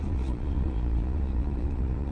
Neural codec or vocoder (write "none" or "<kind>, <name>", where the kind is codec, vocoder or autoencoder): vocoder, Vocos